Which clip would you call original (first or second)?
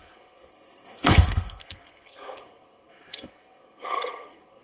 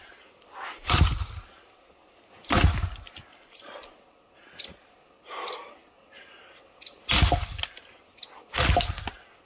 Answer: second